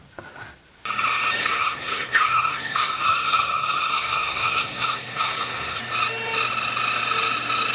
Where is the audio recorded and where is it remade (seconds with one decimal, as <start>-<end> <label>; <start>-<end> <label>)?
0.0-1.4 recorded; 1.4-5.8 remade; 5.8-7.7 recorded